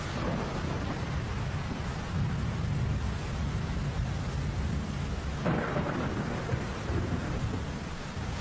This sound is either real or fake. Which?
real